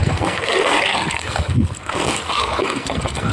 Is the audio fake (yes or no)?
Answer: yes